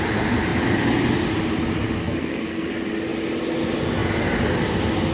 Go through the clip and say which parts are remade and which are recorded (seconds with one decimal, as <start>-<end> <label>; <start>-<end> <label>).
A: 0.0-2.0 recorded; 2.0-2.7 remade; 2.7-5.1 recorded